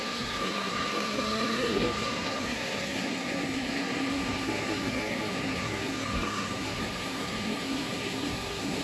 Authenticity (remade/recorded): remade